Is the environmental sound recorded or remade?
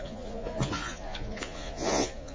remade